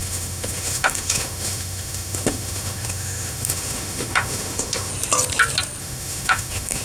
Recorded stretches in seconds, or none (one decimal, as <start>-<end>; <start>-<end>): 4.9-5.8